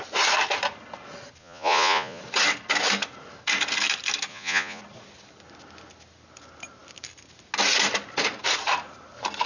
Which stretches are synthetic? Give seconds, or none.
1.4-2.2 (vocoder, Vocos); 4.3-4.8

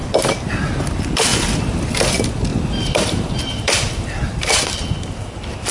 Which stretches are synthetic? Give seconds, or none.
2.5-4.5 (vocoder, BigVGAN v2)